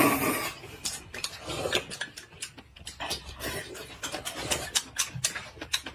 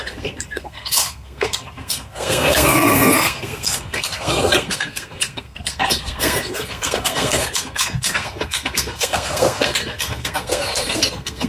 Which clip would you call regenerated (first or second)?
second